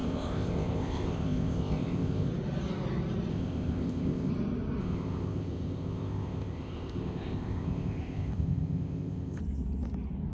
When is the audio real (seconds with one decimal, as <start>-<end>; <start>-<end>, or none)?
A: 2.3-3.3; 4.3-4.8; 9.4-10.3